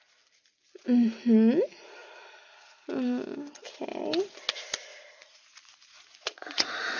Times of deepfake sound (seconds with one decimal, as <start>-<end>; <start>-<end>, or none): 4.9-7.0